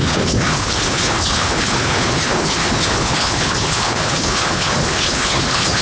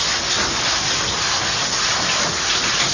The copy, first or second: first